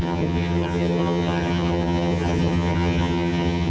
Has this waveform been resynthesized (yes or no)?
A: yes